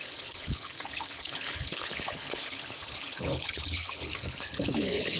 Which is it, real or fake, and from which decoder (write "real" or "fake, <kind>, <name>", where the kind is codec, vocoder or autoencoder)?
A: fake, codec, HILCodec